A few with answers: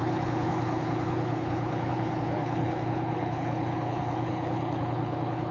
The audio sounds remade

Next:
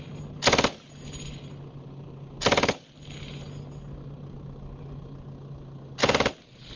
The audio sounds recorded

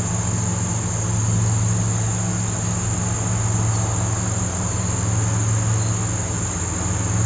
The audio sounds recorded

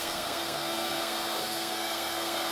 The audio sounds remade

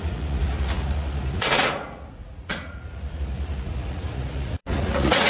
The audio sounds remade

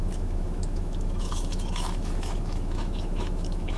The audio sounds remade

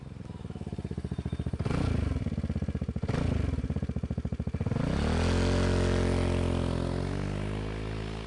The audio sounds recorded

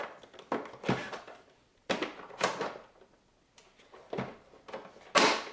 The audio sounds recorded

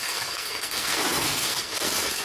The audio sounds remade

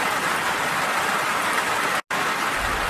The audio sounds recorded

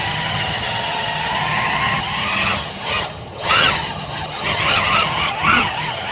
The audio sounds remade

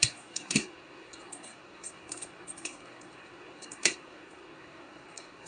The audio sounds remade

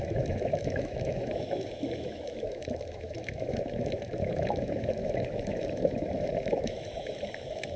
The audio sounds remade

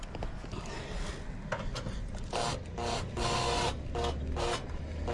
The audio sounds recorded